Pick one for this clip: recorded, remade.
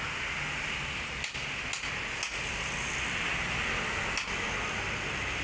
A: recorded